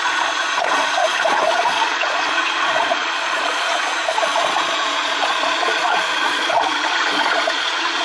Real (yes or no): no